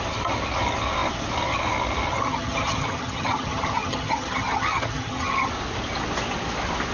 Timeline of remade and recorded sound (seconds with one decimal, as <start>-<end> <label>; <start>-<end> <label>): 0.0-2.1 recorded; 2.1-5.5 remade; 5.5-6.9 recorded